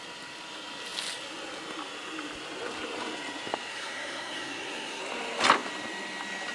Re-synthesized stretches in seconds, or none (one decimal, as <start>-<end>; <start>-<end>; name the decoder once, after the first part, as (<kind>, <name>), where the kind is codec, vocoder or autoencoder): 3.7-5.0 (codec, SNAC)